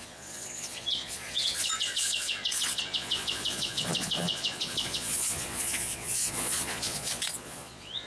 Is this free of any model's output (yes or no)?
no